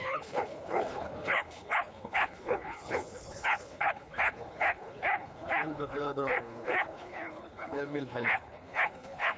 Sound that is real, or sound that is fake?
fake